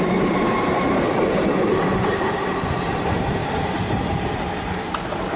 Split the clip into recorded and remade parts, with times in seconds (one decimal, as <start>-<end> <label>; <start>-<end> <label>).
0.0-3.4 remade; 3.4-5.4 recorded